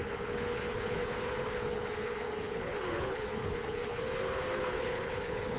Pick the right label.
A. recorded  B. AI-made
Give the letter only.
B